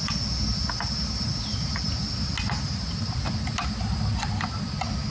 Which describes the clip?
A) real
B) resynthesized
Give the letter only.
A